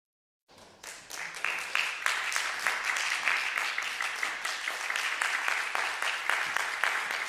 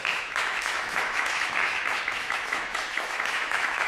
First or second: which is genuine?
first